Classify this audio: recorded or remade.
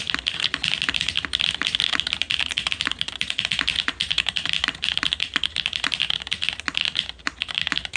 recorded